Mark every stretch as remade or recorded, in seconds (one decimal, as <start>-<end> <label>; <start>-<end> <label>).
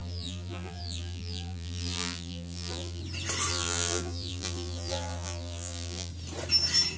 0.0-3.0 remade; 3.0-3.5 recorded; 3.5-6.1 remade; 6.1-7.0 recorded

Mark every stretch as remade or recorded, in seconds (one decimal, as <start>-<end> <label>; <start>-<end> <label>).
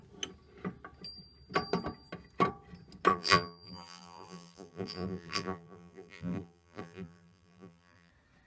0.0-3.1 recorded; 3.1-8.1 remade; 8.1-8.5 recorded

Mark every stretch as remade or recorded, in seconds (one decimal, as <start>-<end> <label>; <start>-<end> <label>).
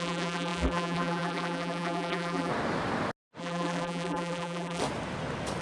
0.0-2.5 remade; 2.5-3.4 recorded; 3.4-4.8 remade; 4.8-5.6 recorded